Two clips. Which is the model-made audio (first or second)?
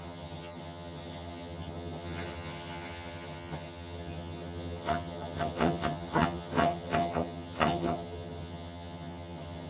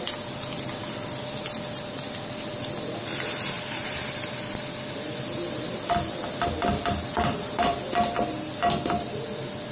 first